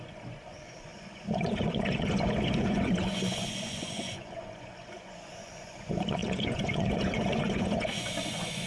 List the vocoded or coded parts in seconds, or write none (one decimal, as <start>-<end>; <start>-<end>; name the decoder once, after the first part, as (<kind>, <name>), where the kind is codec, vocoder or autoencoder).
0.0-8.7 (vocoder, Vocos)